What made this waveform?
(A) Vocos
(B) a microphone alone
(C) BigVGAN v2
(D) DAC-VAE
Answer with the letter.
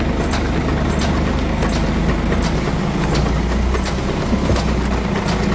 B